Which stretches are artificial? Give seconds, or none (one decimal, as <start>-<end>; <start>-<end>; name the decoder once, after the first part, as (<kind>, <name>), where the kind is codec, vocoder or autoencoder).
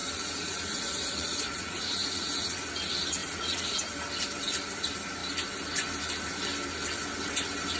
0.0-2.7 (vocoder, Vocos); 3.2-3.8